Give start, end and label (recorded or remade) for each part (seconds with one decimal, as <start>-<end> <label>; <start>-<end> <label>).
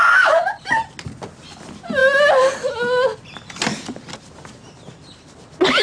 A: 0.0-5.8 recorded